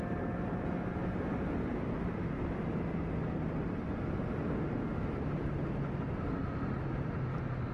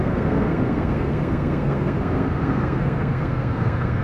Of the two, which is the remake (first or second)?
second